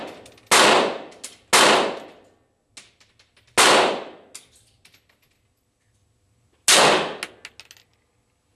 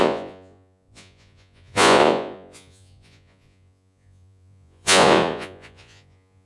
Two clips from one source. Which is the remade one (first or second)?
second